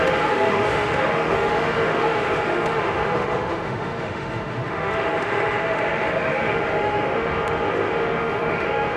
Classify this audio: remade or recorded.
remade